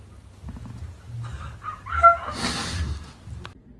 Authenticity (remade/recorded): recorded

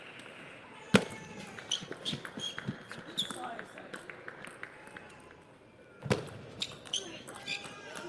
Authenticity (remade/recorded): remade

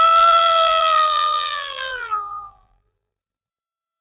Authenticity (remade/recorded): remade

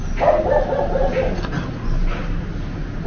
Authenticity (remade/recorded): recorded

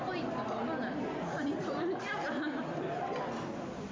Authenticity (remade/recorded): recorded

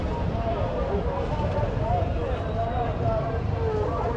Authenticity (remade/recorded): recorded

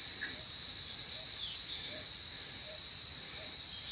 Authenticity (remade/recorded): remade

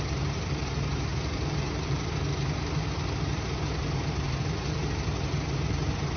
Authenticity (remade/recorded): remade